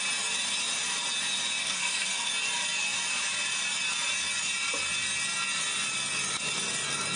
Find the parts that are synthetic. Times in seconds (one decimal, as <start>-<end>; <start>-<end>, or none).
1.6-2.3